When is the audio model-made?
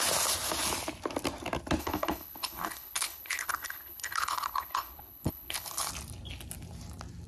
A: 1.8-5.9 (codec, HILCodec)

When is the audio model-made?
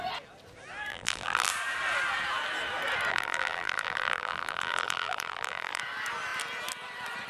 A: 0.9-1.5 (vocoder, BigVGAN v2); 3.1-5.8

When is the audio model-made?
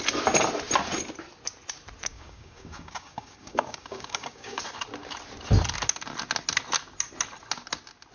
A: 2.1-4.6 (codec, DAC)